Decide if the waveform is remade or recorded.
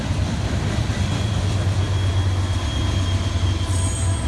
recorded